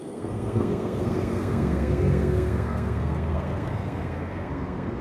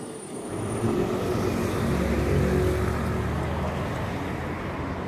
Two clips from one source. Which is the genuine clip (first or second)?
second